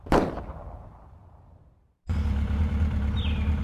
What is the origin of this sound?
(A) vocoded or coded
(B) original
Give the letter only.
B